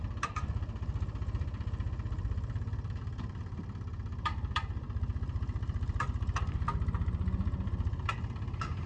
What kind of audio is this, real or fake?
fake